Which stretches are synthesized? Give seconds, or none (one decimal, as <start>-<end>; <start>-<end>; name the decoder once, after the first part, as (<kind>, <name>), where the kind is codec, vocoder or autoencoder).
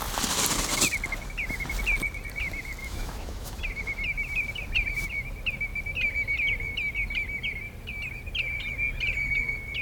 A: 2.8-3.6 (autoencoder, DAC-VAE)